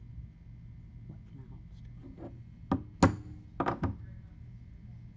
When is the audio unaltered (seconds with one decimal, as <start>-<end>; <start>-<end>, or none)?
0.0-5.2